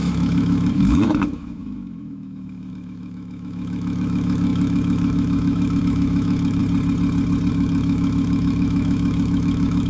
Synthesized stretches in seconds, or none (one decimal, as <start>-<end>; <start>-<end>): 0.0-6.6; 7.5-9.9